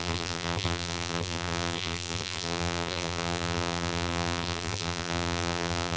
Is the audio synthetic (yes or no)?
yes